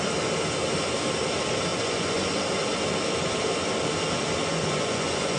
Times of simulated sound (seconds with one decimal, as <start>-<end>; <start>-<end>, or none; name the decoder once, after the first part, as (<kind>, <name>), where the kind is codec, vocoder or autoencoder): 1.7-2.3 (vocoder, Vocos); 4.5-5.4